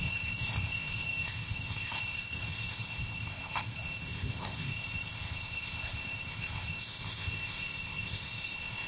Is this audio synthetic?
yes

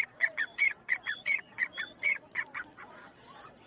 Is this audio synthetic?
yes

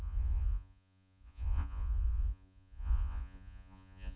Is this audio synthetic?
yes